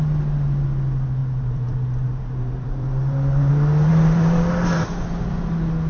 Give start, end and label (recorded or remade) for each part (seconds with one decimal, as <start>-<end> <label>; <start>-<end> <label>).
0.0-1.2 recorded; 1.2-3.5 remade; 3.5-3.9 recorded; 3.9-4.8 remade; 4.8-5.9 recorded